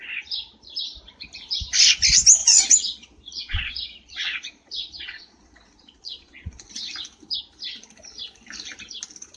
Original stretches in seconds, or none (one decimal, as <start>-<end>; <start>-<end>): 0.0-2.4; 6.7-9.4